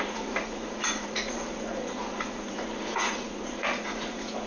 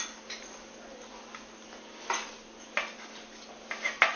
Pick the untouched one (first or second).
second